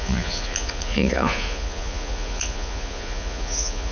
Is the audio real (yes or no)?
no